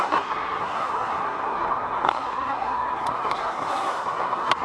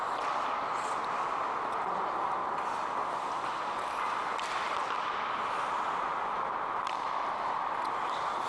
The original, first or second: second